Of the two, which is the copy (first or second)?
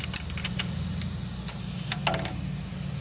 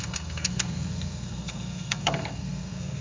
second